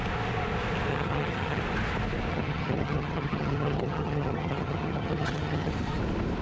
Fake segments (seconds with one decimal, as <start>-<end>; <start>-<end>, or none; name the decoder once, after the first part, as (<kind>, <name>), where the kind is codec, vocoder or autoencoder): 0.9-1.6 (vocoder, HiFi-GAN); 2.3-5.7